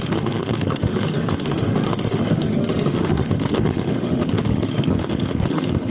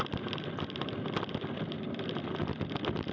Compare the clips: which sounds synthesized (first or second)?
first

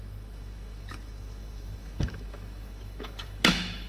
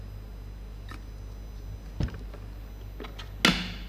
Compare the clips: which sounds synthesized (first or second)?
first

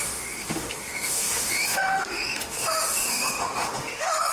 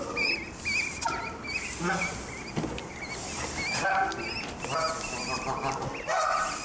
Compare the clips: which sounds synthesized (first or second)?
first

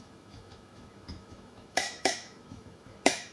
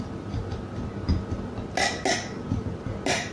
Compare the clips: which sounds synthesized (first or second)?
first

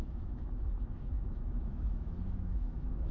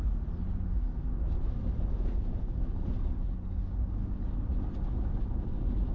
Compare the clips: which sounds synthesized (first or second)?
first